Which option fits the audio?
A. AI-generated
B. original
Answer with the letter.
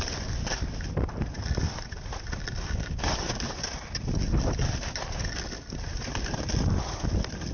B